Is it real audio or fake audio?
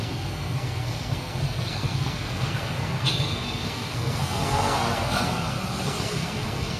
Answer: fake